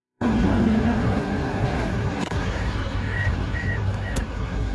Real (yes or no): no